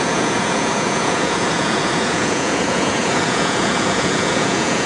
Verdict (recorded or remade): remade